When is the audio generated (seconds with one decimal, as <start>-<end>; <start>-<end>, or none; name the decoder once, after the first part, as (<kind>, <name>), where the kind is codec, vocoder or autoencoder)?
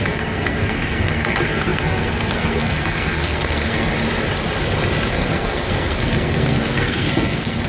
0.0-3.9 (codec, SNAC); 5.1-7.7